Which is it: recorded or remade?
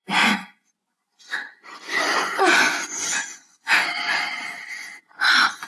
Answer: remade